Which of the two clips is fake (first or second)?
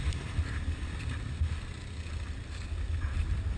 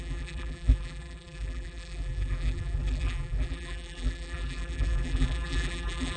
second